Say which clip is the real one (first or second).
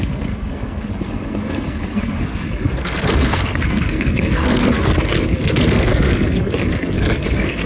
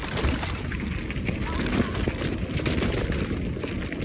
second